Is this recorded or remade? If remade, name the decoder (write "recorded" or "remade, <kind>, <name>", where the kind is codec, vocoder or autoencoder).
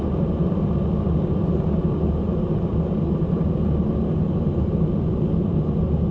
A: recorded